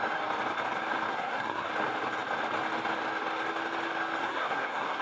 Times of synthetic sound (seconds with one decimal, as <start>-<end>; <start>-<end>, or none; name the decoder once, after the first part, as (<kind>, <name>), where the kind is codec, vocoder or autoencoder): 1.1-1.7 (codec, SNAC); 4.2-5.0

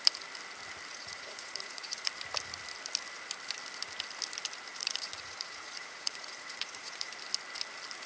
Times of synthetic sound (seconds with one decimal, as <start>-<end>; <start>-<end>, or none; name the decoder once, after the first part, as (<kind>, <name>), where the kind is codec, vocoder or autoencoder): 0.9-2.1 (vocoder, Vocos); 4.7-7.1

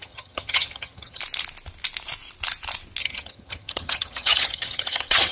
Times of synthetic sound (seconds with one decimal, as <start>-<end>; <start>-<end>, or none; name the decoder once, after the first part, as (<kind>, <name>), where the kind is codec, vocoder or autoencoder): 0.0-1.2 (vocoder, HiFi-GAN); 3.0-5.3

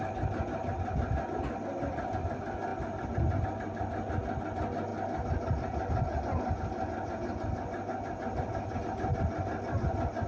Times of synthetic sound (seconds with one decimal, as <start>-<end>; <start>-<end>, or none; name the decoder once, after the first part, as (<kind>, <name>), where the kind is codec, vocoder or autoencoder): none

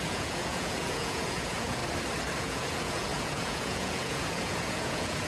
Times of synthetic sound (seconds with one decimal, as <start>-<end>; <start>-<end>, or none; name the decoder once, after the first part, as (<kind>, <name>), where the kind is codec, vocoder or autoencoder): 0.0-1.8 (vocoder, Vocos); 2.4-5.3

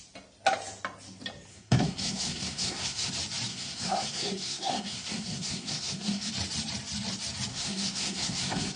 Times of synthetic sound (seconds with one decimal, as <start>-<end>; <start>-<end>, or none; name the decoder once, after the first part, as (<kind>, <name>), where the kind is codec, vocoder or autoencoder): 1.5-3.1 (codec, SNAC); 3.5-6.3; 7.5-8.8

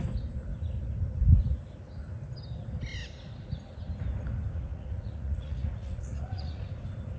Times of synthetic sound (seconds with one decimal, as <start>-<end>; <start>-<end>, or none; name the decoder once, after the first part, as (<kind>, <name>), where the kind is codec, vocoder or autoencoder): 4.7-6.7 (vocoder, Vocos)